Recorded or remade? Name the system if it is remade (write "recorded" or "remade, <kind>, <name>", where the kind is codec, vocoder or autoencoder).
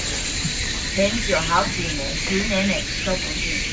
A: recorded